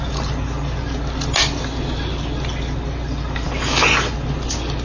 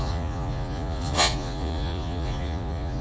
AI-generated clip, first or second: second